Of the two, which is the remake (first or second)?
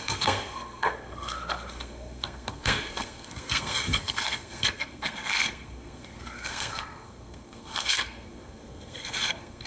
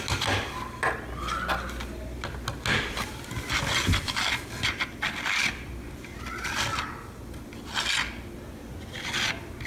first